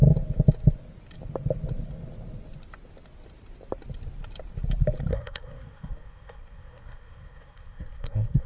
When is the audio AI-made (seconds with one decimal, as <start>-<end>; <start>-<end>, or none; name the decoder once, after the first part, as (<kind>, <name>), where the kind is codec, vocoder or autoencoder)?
5.1-8.5 (codec, SNAC)